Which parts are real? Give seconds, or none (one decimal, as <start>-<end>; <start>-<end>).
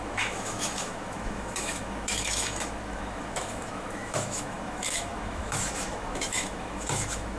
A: none